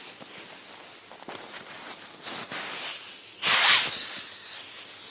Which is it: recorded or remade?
recorded